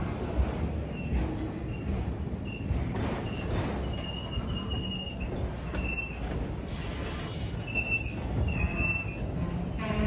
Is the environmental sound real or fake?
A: real